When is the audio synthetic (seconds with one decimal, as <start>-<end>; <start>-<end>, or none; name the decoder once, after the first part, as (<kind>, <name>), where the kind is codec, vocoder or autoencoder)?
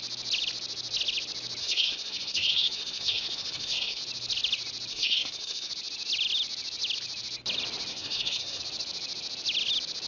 1.6-4.0 (codec, SNAC); 4.9-5.7; 7.9-8.6